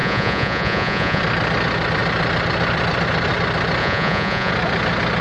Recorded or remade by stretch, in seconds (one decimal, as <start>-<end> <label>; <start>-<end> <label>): 0.0-1.2 remade; 1.2-3.8 recorded; 3.8-4.5 remade; 4.5-5.2 recorded